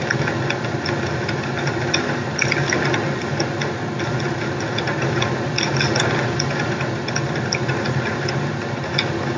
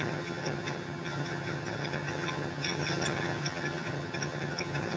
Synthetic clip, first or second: second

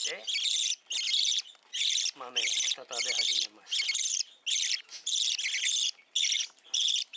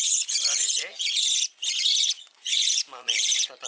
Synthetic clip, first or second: second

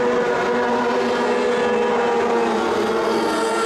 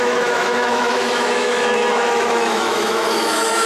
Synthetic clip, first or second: second